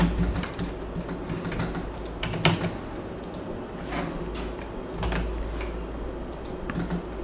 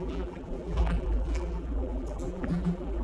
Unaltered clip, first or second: first